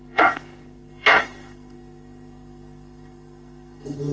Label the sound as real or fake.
fake